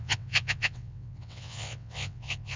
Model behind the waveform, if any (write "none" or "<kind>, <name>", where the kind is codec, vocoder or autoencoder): vocoder, WaveNeXt